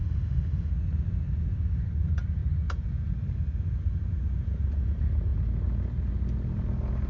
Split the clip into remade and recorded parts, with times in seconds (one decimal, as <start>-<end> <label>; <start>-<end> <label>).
0.0-0.7 remade; 0.7-7.1 recorded